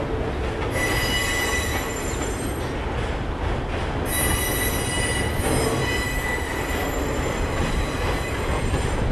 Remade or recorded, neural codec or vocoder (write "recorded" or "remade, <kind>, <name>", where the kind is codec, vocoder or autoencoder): recorded